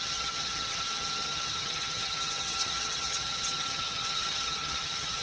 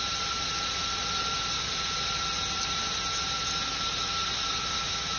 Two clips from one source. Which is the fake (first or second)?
first